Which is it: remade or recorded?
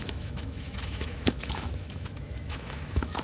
remade